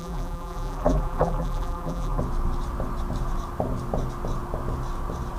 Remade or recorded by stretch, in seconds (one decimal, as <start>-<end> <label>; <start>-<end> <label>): 0.0-2.2 remade; 2.2-5.4 recorded

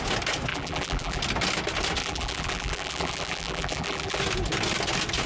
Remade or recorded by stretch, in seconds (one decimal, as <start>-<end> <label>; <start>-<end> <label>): 0.0-0.5 recorded; 0.5-1.2 remade; 1.2-2.0 recorded; 2.0-4.2 remade; 4.2-5.3 recorded

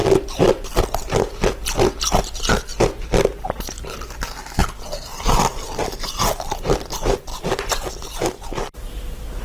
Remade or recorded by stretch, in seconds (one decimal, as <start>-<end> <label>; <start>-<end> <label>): 0.0-7.3 recorded; 7.3-7.9 remade; 7.9-9.4 recorded

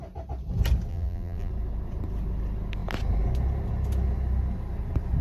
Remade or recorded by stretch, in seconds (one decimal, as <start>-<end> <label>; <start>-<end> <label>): 0.0-0.9 recorded; 0.9-1.5 remade; 1.5-5.2 recorded

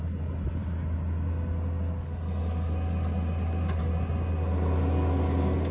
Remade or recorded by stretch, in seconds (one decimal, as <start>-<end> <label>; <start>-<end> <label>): 0.0-5.7 recorded

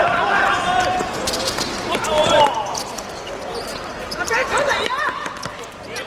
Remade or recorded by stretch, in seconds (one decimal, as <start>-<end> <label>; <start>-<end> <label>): 0.0-2.2 recorded; 2.2-6.1 remade

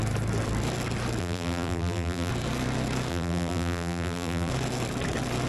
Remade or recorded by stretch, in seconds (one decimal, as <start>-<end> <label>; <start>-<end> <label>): 0.0-1.2 recorded; 1.2-2.3 remade; 2.3-3.1 recorded; 3.1-4.5 remade; 4.5-5.5 recorded